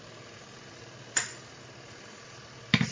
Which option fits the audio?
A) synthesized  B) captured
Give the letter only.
B